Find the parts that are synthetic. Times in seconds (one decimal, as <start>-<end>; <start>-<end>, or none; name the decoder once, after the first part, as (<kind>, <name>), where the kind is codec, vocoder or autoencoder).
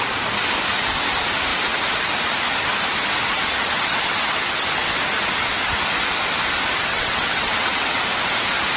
6.9-8.0 (vocoder, WaveNeXt)